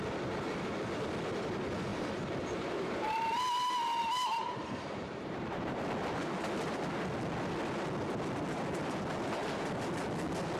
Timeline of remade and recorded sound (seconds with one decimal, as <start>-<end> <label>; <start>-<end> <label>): 0.0-1.9 recorded; 1.9-3.4 remade; 3.4-4.0 recorded; 4.0-5.8 remade; 5.8-10.6 recorded